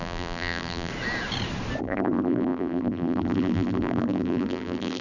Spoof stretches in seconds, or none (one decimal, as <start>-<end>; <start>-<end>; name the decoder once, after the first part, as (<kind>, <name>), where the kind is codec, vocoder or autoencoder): 0.0-0.9 (vocoder, BigVGAN v2); 1.8-5.0